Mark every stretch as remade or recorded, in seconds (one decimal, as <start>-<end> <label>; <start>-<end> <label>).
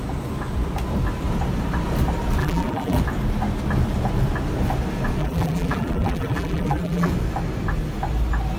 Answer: 0.0-2.4 recorded; 2.4-3.0 remade; 3.0-5.2 recorded; 5.2-7.1 remade; 7.1-8.6 recorded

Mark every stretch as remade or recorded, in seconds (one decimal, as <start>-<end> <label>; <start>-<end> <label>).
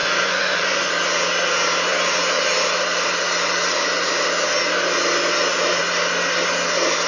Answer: 0.0-0.9 remade; 0.9-7.1 recorded